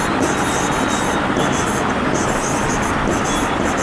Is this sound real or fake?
real